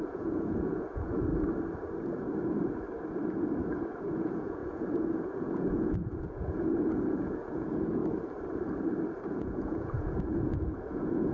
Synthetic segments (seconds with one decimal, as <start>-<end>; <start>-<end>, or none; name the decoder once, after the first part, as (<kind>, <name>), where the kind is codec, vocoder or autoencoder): 0.0-1.3 (vocoder, Vocos); 4.0-8.0; 9.3-11.3

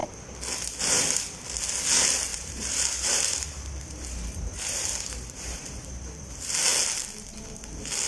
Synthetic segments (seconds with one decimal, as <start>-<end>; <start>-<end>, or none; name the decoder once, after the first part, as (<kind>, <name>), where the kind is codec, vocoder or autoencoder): 2.3-6.3 (vocoder, BigVGAN v2)

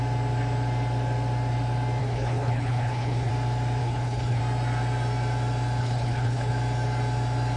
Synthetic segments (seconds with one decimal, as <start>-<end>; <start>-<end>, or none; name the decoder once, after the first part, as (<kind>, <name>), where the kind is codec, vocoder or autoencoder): 2.0-3.3 (codec, HILCodec); 3.8-4.4; 5.8-6.5